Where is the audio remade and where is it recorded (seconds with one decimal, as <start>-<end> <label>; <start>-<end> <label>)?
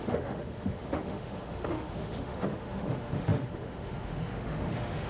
0.0-5.1 remade